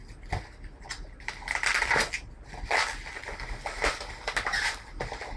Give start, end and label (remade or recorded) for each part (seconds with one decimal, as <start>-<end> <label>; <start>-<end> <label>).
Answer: 0.0-5.4 recorded